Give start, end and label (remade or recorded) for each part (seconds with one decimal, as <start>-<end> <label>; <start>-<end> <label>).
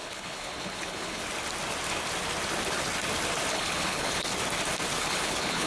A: 0.0-1.2 remade; 1.2-3.5 recorded; 3.5-4.3 remade; 4.3-5.0 recorded; 5.0-5.7 remade